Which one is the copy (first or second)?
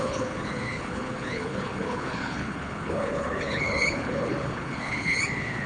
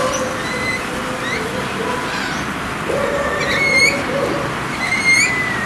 first